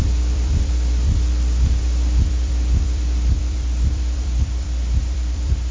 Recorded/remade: remade